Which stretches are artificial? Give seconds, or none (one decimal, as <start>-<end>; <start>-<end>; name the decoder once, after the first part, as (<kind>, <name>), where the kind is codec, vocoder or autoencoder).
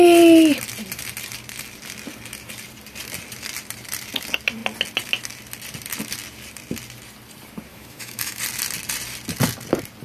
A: 7.7-8.4 (autoencoder, DAC-VAE)